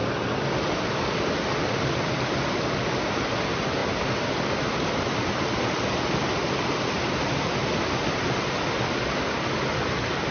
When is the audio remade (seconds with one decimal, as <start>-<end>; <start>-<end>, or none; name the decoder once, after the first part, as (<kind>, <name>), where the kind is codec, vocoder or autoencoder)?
none